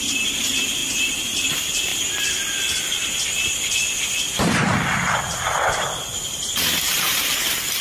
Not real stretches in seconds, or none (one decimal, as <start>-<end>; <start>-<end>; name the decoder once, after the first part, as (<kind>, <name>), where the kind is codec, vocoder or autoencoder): 0.0-1.9 (vocoder, BigVGAN v2); 4.2-4.7; 5.5-7.8